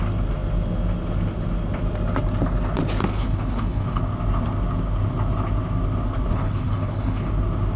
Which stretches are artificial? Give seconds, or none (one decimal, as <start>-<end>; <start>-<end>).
3.1-4.0; 6.3-7.3

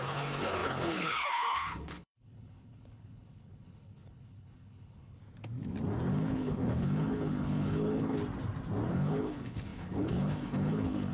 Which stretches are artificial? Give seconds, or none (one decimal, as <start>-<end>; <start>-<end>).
0.0-5.2; 6.1-8.2; 8.9-11.1

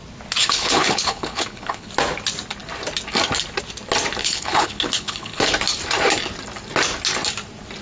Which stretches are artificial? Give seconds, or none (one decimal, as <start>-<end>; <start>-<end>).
0.4-1.9; 4.2-5.5

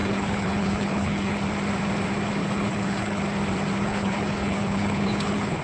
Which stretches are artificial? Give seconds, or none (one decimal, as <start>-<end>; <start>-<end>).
0.0-1.4; 2.4-3.2; 3.8-5.6

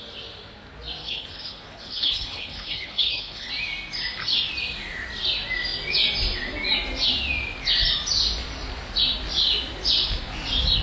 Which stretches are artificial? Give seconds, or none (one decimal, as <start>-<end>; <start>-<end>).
1.0-3.5

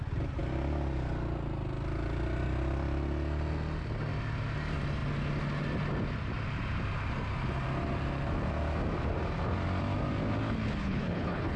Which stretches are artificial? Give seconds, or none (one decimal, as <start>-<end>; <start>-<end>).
10.8-11.6